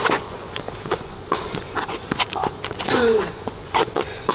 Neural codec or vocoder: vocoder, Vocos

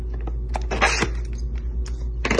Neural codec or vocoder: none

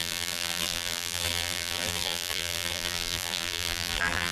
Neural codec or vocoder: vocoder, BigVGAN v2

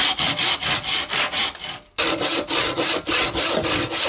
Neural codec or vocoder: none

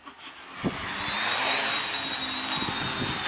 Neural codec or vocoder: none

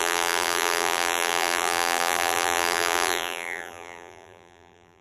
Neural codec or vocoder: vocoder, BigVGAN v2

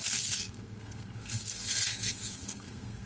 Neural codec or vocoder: codec, SNAC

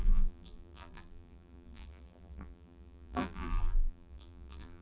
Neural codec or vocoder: vocoder, BigVGAN v2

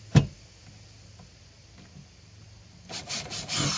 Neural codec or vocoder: none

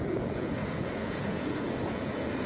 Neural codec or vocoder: vocoder, Vocos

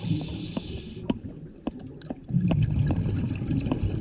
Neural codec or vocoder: none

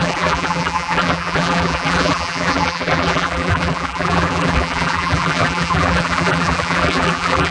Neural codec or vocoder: vocoder, BigVGAN v2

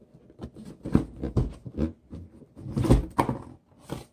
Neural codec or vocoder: none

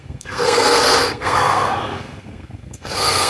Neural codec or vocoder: codec, SNAC